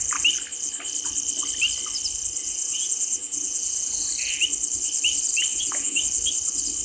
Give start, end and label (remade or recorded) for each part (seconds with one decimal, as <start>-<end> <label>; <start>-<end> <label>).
0.0-2.4 recorded; 2.4-4.1 remade; 4.1-5.5 recorded; 5.5-6.0 remade; 6.0-6.8 recorded